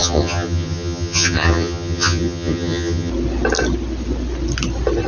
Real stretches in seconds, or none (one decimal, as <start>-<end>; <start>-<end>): 3.1-5.1